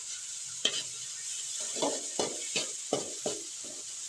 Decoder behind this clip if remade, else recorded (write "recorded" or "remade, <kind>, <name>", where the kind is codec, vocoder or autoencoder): remade, vocoder, Vocos